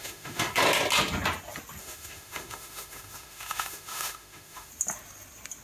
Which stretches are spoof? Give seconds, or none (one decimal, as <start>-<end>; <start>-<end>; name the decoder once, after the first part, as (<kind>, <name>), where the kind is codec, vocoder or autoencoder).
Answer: 0.0-0.6 (autoencoder, DAC-VAE); 1.8-4.7